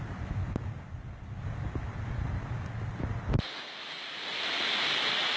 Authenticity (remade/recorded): recorded